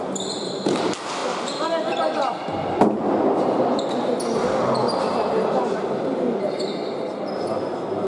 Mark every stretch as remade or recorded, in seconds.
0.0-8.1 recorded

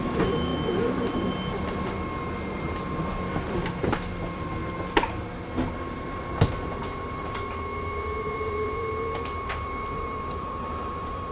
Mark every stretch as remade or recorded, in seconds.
0.0-0.5 remade; 0.5-3.7 recorded; 3.7-4.6 remade; 4.6-6.4 recorded; 6.4-11.3 remade

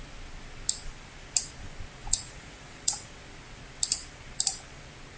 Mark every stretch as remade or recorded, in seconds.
0.0-2.0 recorded; 2.0-3.1 remade; 3.1-5.2 recorded

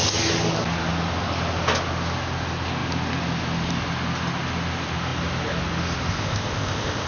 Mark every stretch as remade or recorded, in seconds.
0.0-6.1 recorded; 6.1-7.1 remade

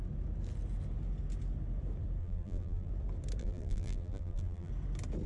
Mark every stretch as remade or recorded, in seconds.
0.0-2.2 recorded; 2.2-2.9 remade; 2.9-3.4 recorded; 3.4-4.7 remade; 4.7-5.3 recorded

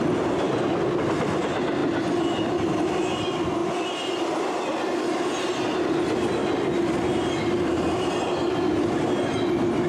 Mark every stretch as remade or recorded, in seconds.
0.0-9.9 recorded